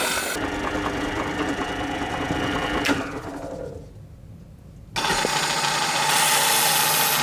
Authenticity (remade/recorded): recorded